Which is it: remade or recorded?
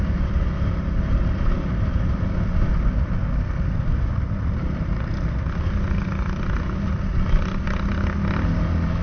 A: recorded